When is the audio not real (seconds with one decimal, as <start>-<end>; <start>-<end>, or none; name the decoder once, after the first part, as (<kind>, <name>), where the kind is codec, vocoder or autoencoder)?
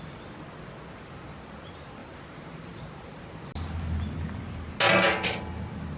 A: 2.0-3.4 (vocoder, BigVGAN v2)